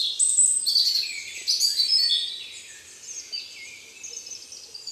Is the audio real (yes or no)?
yes